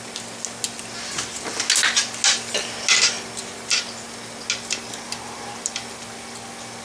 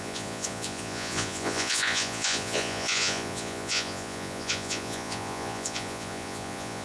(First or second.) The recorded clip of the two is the first